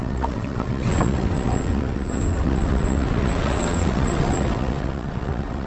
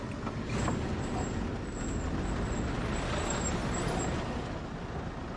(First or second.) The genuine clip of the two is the second